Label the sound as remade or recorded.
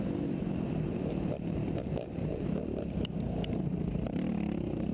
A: remade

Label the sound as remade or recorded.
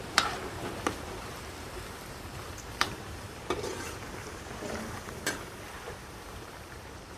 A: remade